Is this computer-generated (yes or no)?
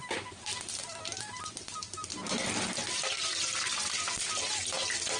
no